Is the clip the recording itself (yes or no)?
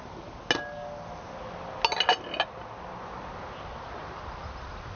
yes